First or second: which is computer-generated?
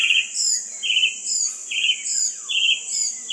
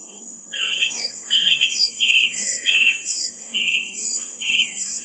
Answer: second